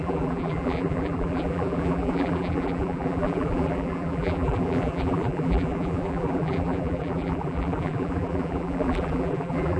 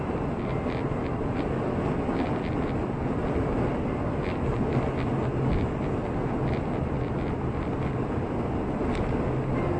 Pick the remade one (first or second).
first